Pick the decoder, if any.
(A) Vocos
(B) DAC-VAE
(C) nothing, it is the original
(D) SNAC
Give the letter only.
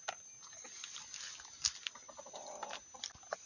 C